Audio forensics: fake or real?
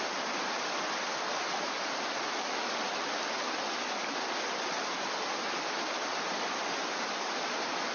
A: real